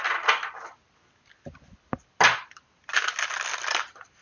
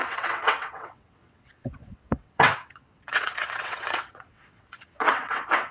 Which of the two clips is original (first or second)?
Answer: first